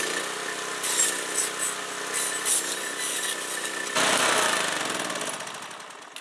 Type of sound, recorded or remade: recorded